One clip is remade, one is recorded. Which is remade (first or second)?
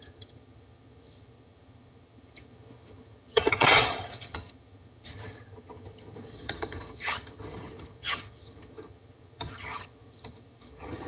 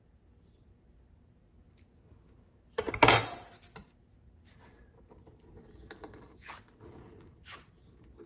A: first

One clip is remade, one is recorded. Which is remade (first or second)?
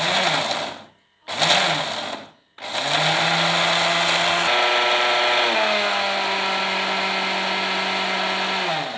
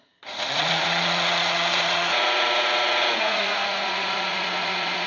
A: second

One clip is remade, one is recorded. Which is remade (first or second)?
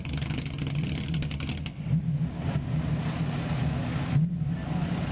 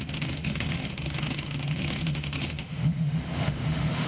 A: second